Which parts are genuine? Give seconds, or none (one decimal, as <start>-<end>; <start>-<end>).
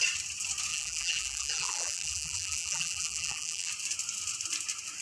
0.0-0.7; 3.7-5.0